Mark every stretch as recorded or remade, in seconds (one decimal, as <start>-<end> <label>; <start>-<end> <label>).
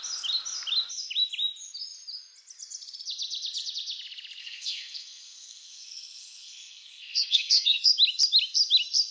0.0-4.4 recorded; 4.4-7.9 remade; 7.9-9.1 recorded